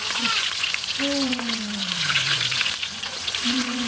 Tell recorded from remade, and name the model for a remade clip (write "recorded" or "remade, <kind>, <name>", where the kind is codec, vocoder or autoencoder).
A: remade, vocoder, Vocos